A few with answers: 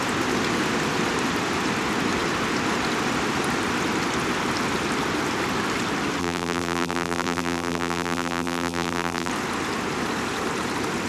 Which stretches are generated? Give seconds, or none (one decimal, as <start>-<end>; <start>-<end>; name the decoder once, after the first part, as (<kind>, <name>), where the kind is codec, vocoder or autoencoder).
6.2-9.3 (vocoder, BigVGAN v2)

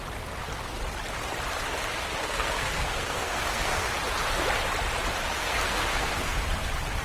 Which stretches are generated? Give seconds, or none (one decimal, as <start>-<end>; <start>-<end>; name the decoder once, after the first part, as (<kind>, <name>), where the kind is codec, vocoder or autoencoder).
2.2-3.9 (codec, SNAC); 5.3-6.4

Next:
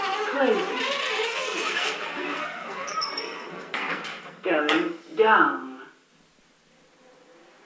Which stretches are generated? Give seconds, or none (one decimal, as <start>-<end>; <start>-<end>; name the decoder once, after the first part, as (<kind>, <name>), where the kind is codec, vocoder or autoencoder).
1.0-5.0 (codec, SNAC)

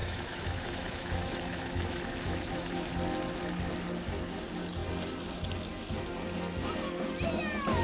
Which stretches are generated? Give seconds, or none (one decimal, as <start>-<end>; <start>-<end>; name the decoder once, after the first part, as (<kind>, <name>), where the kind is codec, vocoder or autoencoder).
0.0-2.9 (autoencoder, DAC-VAE)